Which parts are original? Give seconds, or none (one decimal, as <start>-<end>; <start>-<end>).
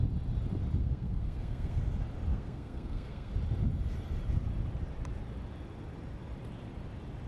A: 0.0-0.8; 1.8-2.3; 3.3-7.3